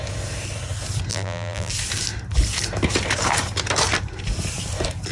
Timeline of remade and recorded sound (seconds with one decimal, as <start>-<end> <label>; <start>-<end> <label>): 0.0-1.1 recorded; 1.1-1.7 remade; 1.7-5.1 recorded